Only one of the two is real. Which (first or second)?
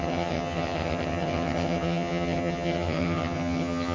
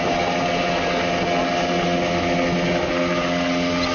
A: second